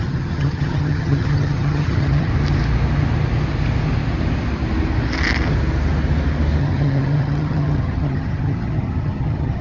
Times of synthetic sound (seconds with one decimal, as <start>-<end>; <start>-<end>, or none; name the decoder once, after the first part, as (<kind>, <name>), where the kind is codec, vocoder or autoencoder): 0.0-2.3 (vocoder, HiFi-GAN); 6.6-9.6